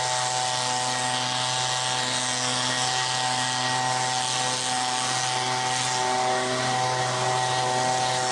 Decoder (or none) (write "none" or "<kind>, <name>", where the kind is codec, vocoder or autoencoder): none